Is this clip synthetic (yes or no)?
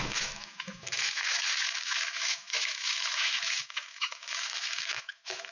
yes